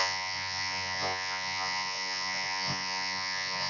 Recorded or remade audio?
remade